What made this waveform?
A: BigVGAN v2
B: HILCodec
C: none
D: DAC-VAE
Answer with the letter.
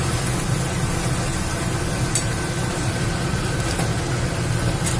C